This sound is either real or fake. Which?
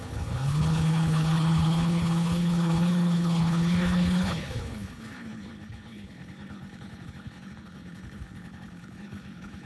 fake